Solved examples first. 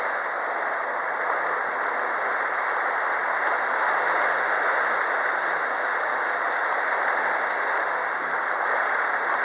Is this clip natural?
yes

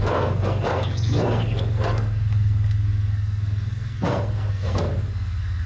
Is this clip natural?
no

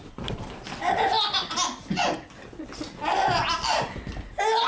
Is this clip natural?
yes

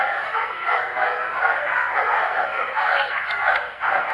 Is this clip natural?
no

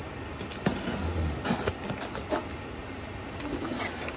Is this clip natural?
yes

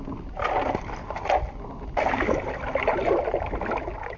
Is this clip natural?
yes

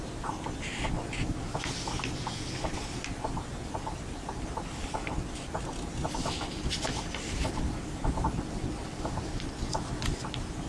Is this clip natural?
yes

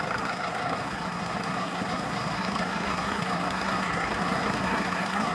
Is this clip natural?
no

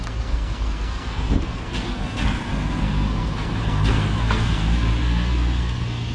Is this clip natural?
no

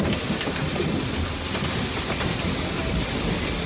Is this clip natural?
yes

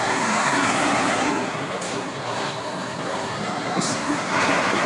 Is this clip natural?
no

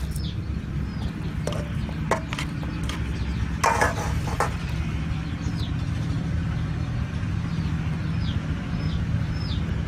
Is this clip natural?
yes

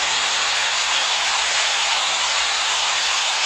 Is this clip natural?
no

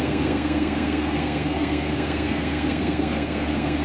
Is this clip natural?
no